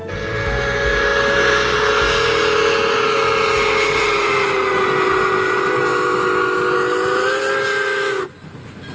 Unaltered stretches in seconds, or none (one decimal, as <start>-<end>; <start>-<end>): 0.0-8.9